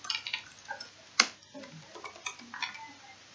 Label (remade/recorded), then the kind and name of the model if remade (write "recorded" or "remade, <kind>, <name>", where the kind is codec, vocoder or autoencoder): recorded